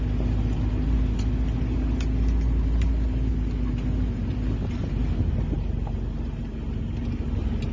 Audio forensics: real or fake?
real